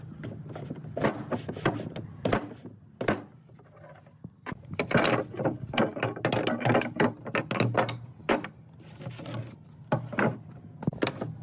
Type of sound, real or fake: real